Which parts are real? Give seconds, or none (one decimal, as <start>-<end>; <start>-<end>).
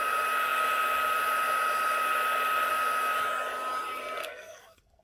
0.0-4.2